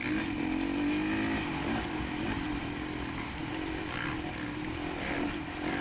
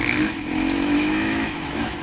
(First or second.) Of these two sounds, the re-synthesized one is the second